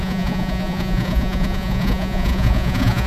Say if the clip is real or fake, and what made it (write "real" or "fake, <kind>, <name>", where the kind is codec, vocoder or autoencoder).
fake, vocoder, Vocos